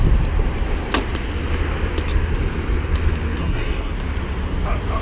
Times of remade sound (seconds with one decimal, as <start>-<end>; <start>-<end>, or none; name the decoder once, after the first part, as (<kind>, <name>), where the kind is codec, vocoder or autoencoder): 3.4-3.9 (codec, SNAC)